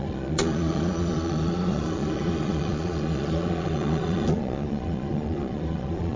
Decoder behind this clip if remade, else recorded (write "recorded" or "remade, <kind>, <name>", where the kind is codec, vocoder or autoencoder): remade, vocoder, Vocos